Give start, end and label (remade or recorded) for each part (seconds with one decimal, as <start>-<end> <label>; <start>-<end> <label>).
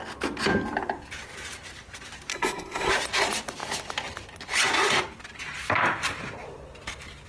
0.0-2.3 recorded; 2.3-2.9 remade; 2.9-7.3 recorded